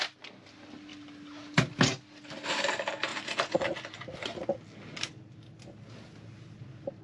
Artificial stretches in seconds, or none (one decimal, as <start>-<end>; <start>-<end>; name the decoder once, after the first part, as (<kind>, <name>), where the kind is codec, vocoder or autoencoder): none